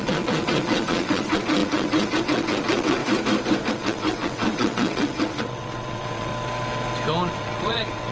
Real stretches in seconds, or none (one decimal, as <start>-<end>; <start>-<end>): 3.0-3.7; 6.3-7.3